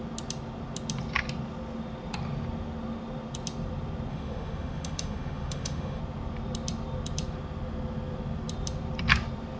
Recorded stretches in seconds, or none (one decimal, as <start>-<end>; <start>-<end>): 0.0-4.1; 6.0-9.6

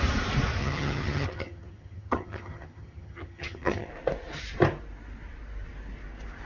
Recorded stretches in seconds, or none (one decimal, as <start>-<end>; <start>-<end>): 0.0-0.6; 3.9-6.5